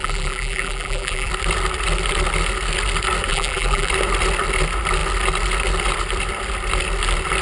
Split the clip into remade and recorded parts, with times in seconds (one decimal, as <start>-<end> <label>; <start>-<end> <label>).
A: 0.0-1.3 remade; 1.3-3.3 recorded; 3.3-3.9 remade; 3.9-7.4 recorded